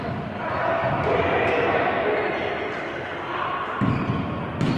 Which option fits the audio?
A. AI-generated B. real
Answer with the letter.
B